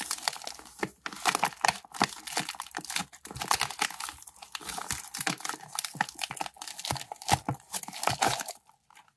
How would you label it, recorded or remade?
recorded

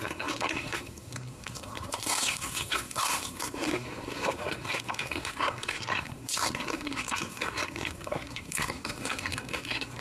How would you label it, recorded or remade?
remade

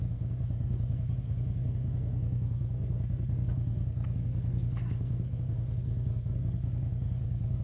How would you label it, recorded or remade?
remade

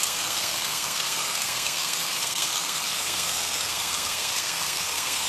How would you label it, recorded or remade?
remade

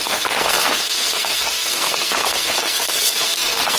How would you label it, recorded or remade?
remade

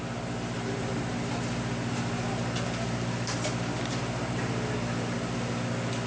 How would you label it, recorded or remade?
recorded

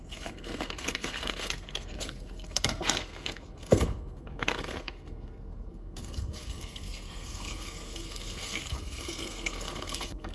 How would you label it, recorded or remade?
remade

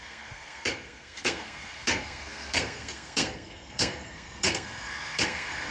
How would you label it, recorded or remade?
remade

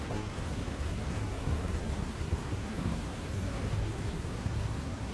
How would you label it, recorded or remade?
remade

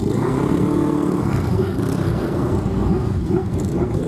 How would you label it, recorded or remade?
remade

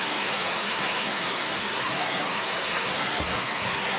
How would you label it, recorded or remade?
remade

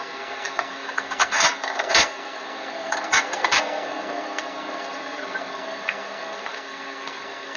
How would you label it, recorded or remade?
remade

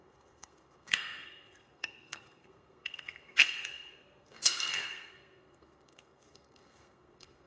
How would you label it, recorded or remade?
remade